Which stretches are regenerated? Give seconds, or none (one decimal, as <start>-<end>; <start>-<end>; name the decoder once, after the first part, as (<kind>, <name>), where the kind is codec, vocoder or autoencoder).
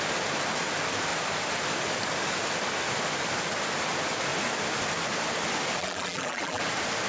5.8-6.6 (vocoder, BigVGAN v2)